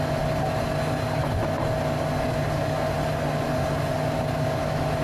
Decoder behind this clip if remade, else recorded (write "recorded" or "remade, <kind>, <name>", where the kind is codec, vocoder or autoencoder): recorded